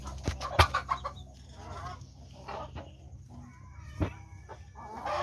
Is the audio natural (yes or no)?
yes